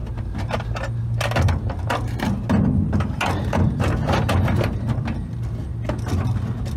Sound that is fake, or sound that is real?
real